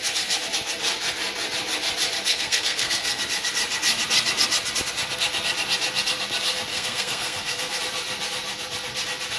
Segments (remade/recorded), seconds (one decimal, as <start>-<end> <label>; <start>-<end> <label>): 0.0-2.3 recorded; 2.3-3.2 remade; 3.2-6.7 recorded; 6.7-7.8 remade; 7.8-9.4 recorded